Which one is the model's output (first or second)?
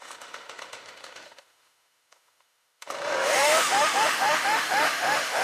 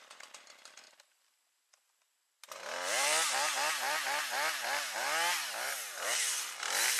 first